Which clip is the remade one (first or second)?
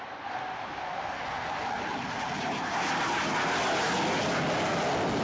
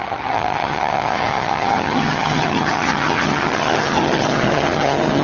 second